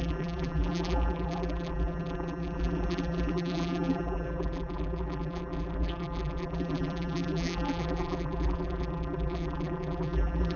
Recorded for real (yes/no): no